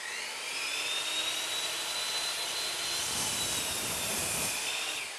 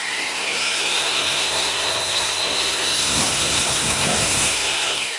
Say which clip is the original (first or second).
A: first